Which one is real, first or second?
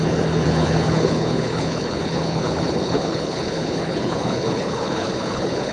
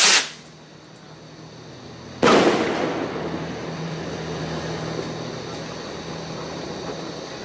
second